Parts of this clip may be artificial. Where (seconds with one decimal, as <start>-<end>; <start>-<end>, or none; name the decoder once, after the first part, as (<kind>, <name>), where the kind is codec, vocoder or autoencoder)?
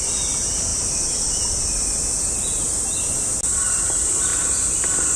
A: none